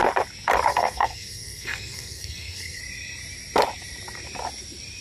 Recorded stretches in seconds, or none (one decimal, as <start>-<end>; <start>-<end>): 0.0-0.7; 2.8-5.0